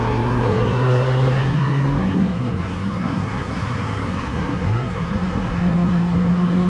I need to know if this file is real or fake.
fake